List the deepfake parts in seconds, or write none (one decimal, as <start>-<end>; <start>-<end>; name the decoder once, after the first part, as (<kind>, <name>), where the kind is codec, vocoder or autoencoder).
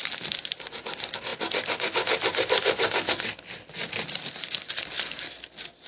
none